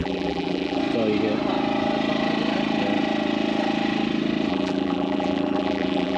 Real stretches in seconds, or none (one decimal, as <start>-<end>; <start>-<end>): 0.8-4.5